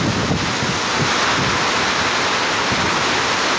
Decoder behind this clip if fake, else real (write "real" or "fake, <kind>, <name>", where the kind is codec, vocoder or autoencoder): real